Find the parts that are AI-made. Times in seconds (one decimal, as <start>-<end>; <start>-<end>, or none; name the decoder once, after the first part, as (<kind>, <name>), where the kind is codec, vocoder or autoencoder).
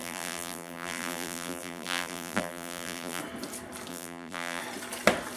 0.0-3.2 (vocoder, BigVGAN v2); 3.9-4.6